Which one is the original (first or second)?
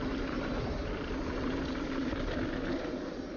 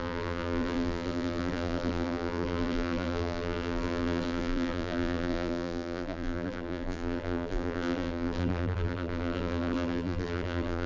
first